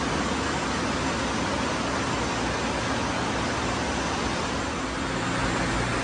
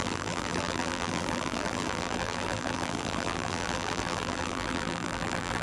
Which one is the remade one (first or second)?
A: second